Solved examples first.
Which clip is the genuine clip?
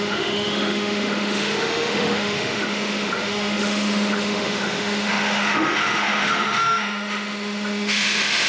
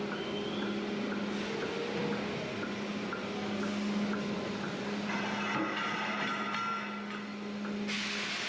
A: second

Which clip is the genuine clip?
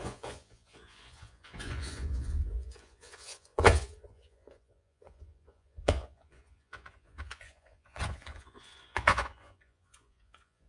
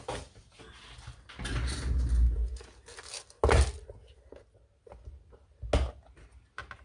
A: second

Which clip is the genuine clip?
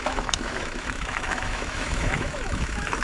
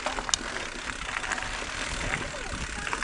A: second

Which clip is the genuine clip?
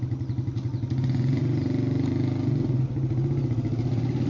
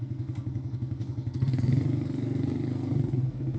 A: first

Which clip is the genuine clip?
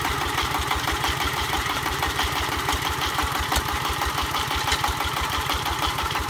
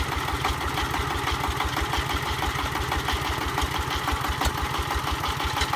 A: second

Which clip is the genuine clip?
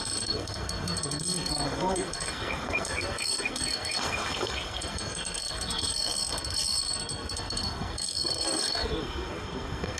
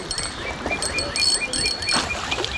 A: second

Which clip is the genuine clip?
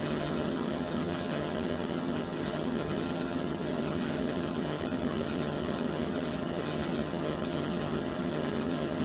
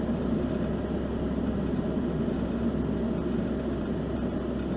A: second